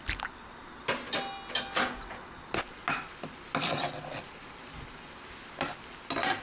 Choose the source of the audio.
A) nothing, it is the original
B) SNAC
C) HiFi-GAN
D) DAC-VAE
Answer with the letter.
A